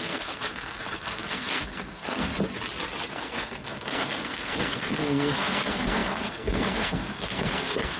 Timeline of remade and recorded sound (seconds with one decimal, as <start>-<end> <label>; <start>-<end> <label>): 0.0-2.3 remade; 2.3-3.1 recorded; 3.1-8.0 remade